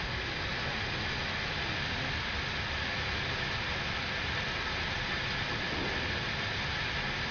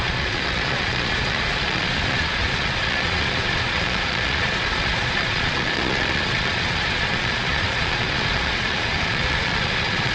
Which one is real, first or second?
first